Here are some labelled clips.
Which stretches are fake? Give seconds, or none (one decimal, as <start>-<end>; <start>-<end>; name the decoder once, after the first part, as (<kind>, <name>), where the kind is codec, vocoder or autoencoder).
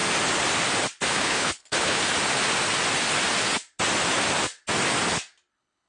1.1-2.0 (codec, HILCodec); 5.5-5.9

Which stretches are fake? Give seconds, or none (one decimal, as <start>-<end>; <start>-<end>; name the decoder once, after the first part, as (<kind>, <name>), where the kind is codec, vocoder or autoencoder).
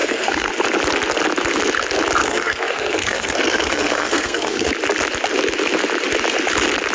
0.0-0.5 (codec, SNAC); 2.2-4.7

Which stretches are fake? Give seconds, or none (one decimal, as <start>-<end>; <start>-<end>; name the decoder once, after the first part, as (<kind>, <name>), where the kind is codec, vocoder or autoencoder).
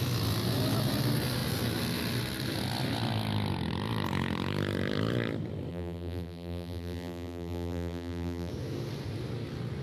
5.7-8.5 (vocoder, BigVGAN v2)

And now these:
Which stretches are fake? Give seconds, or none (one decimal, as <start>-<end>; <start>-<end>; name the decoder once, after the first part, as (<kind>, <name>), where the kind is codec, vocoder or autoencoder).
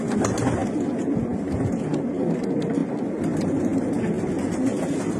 none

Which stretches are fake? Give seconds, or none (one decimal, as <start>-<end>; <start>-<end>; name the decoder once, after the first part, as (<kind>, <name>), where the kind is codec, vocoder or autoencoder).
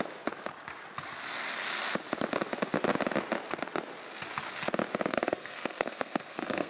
5.1-6.7 (codec, SNAC)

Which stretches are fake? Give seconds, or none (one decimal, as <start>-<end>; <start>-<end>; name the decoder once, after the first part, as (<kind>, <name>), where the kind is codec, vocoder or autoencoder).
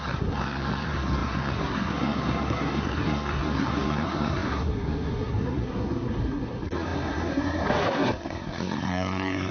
0.0-9.5 (codec, SNAC)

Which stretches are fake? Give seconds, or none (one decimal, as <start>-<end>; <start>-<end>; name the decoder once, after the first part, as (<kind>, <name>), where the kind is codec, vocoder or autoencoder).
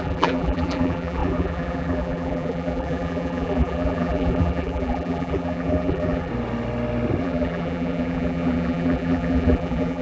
0.0-6.3 (vocoder, BigVGAN v2); 7.2-10.0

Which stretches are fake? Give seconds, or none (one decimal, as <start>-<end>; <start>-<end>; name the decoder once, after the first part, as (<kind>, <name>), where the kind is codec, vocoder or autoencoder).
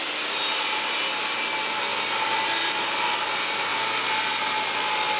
none